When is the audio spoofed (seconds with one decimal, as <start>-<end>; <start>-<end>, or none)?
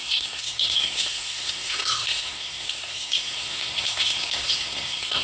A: 0.0-5.2